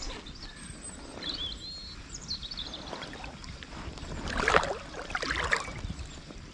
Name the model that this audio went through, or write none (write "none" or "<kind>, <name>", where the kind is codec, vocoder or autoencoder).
none